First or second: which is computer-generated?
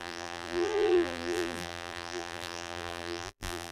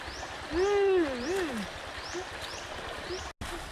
first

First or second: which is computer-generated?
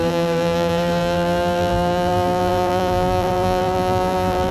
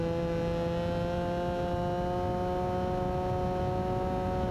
first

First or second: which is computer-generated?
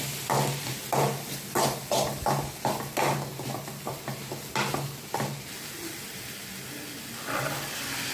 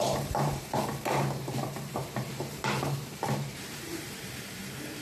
second